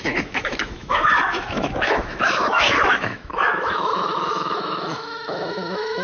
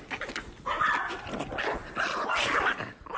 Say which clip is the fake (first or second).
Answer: first